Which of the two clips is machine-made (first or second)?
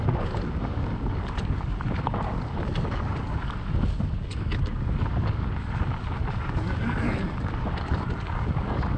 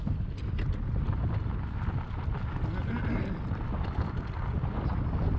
first